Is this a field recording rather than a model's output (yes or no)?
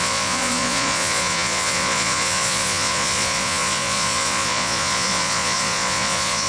no